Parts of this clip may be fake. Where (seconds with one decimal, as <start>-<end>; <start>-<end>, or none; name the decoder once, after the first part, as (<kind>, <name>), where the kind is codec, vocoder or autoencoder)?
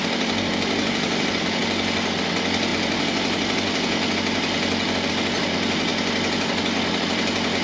0.0-2.7 (vocoder, BigVGAN v2); 5.1-5.9; 6.6-7.6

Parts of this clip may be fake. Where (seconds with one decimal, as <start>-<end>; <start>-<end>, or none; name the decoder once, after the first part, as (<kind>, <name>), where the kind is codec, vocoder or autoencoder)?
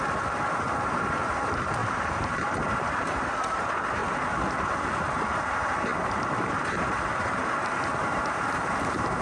0.0-4.0 (vocoder, BigVGAN v2); 4.6-9.2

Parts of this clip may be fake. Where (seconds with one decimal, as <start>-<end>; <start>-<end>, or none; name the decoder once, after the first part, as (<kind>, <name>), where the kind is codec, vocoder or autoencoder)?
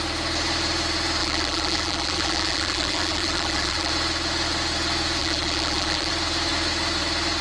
1.2-3.9 (vocoder, BigVGAN v2); 5.2-6.1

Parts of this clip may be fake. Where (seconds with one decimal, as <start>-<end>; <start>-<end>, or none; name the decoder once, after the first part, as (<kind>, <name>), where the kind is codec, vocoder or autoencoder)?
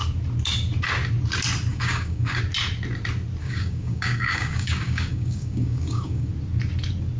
1.7-2.4 (codec, DAC); 3.4-6.3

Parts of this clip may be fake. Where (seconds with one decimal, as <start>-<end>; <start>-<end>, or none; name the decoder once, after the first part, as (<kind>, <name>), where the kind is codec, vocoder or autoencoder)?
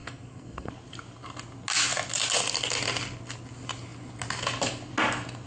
0.0-0.7 (codec, SNAC)